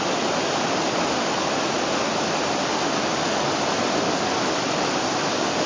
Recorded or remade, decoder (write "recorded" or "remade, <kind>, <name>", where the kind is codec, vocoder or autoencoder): recorded